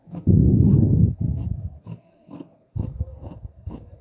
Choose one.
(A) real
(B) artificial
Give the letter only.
B